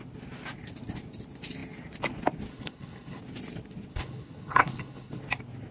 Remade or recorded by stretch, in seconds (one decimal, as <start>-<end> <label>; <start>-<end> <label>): 0.0-2.5 recorded; 2.5-3.2 remade; 3.2-3.9 recorded; 3.9-5.2 remade; 5.2-5.7 recorded